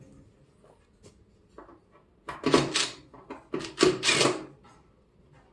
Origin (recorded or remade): recorded